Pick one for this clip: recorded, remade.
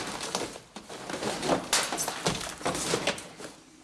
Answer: recorded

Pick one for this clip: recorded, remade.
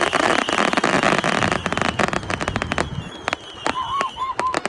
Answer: recorded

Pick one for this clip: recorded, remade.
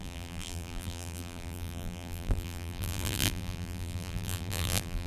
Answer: remade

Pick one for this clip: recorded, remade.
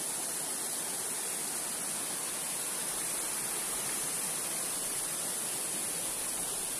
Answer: recorded